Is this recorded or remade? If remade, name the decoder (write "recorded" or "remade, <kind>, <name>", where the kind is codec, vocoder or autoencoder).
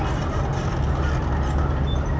recorded